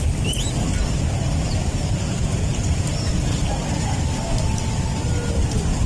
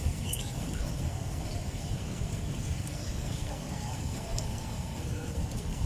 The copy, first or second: second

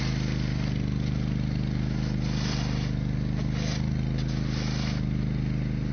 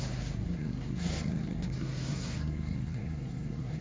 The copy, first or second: second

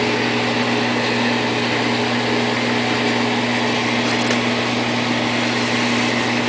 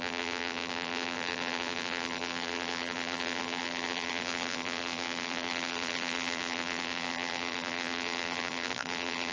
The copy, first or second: second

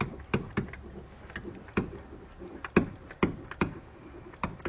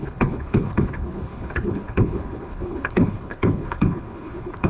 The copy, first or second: second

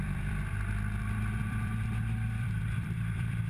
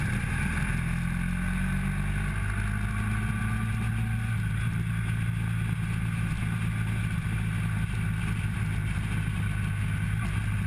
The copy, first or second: first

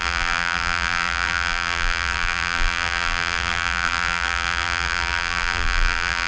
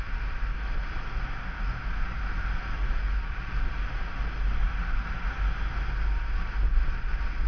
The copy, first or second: first